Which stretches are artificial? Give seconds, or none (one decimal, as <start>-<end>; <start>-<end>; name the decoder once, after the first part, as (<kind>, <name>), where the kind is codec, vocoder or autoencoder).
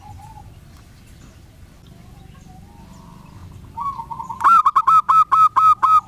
none